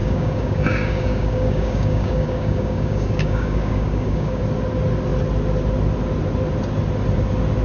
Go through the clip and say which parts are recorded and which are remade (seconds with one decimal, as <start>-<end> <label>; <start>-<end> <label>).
0.0-4.4 remade; 4.4-7.6 recorded